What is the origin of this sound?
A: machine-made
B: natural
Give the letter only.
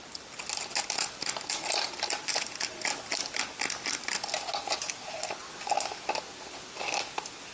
B